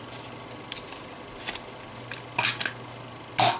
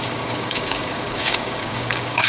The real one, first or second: first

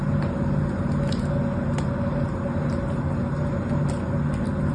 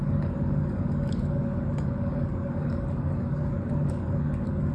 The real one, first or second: first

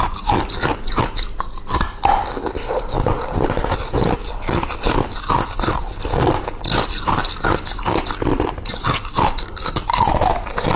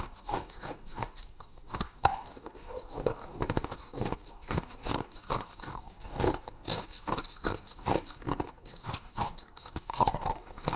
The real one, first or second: first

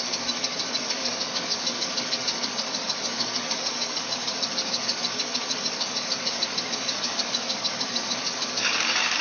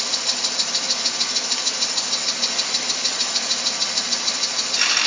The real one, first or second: second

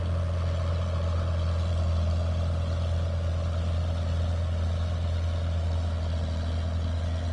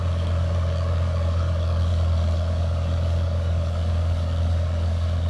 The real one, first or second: first